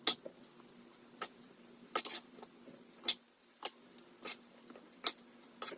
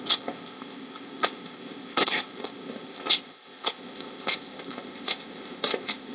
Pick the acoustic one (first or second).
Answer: first